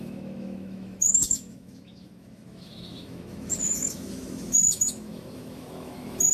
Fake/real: fake